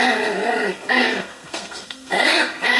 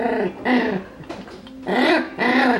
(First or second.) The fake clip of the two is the first